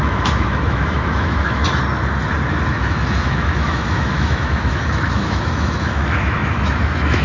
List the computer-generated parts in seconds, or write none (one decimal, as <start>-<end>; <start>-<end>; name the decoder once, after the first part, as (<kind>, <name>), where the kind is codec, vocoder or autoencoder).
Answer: 0.0-1.6 (autoencoder, DAC-VAE); 2.7-7.2